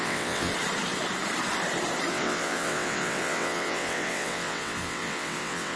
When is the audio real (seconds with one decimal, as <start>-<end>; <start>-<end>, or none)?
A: 0.5-2.1